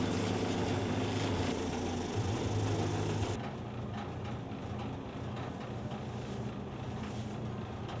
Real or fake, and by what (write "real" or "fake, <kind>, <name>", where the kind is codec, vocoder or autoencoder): real